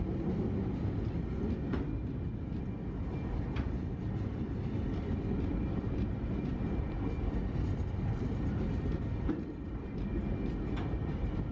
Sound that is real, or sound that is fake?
real